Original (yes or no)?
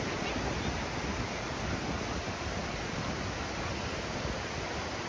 yes